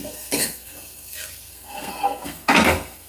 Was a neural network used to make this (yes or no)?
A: yes